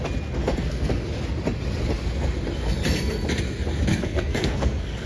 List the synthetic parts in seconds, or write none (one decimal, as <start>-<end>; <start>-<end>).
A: 0.4-0.9; 3.9-5.1